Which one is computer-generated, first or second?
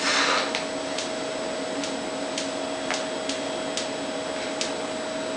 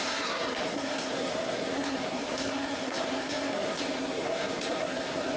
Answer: second